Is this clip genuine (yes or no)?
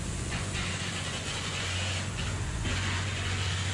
no